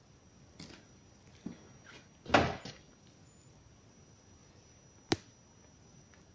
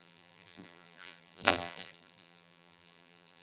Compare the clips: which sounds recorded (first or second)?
first